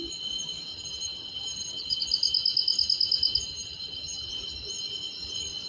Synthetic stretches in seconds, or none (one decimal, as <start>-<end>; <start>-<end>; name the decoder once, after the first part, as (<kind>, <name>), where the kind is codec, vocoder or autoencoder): 0.7-2.0 (vocoder, HiFi-GAN); 3.5-4.3